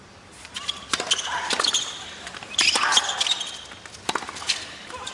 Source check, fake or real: real